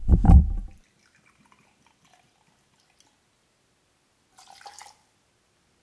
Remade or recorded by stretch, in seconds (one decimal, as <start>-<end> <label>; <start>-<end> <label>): 0.0-5.8 recorded